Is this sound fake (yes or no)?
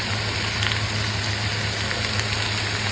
no